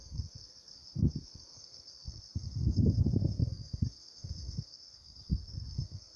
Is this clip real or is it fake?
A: fake